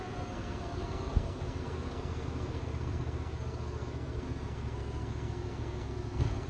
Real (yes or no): no